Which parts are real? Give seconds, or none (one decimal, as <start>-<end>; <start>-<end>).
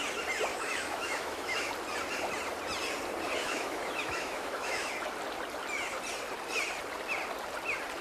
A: 0.0-0.5; 1.7-3.4; 4.9-8.0